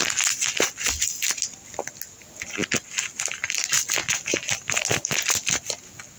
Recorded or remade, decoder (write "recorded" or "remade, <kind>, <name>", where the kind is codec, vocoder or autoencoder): recorded